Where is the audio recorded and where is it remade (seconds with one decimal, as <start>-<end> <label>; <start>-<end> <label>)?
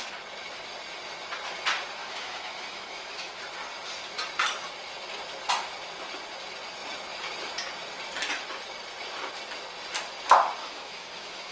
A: 0.0-2.0 recorded; 2.0-3.4 remade; 3.4-10.6 recorded; 10.6-11.5 remade